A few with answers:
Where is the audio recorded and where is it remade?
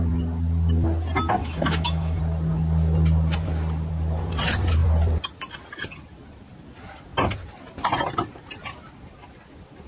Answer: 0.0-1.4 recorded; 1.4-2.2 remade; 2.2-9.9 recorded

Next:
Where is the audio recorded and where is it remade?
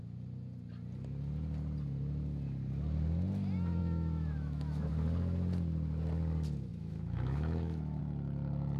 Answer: 0.0-3.8 recorded; 3.8-4.9 remade; 4.9-6.7 recorded; 6.7-8.0 remade; 8.0-8.8 recorded